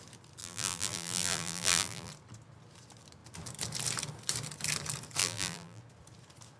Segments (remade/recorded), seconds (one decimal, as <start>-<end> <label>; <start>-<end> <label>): 0.0-0.4 recorded; 0.4-2.1 remade; 2.1-5.2 recorded; 5.2-5.8 remade; 5.8-6.6 recorded